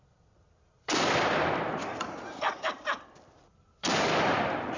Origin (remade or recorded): remade